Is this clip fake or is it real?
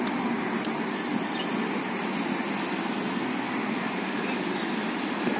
real